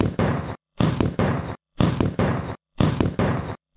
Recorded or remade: remade